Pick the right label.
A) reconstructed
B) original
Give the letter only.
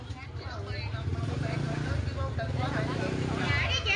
B